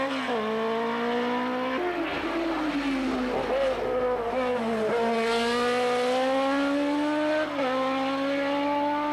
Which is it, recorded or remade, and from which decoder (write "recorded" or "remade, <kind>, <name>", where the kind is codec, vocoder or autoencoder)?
recorded